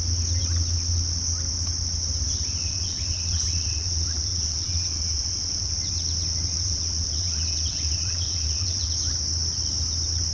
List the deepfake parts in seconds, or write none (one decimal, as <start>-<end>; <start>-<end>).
2.6-5.7; 6.5-8.9